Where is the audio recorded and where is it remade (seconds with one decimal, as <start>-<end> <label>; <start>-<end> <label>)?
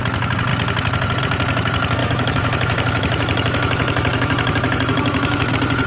0.0-2.0 recorded; 2.0-5.5 remade; 5.5-5.9 recorded